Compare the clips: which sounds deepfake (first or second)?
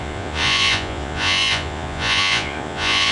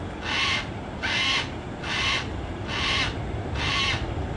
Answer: first